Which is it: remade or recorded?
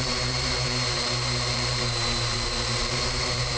remade